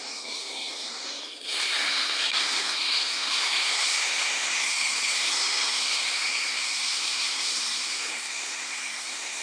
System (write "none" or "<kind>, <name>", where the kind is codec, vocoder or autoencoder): codec, SNAC